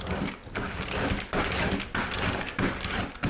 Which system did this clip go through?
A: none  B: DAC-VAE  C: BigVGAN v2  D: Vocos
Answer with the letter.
A